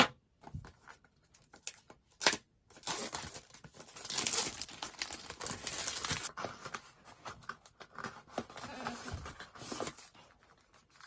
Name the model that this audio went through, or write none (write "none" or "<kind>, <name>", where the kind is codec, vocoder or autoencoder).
none